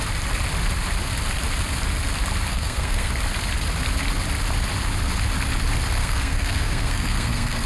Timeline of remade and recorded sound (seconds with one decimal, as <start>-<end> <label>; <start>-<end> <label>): 0.0-2.5 recorded; 2.5-3.1 remade; 3.1-6.0 recorded; 6.0-7.7 remade